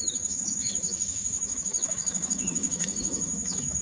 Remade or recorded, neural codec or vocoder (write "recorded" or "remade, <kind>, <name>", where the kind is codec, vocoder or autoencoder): remade, autoencoder, DAC-VAE